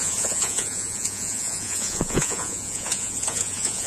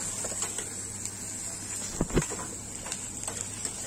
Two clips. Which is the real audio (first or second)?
second